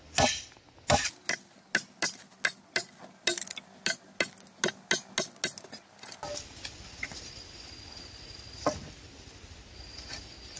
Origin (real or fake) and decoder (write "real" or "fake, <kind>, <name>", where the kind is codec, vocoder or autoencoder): real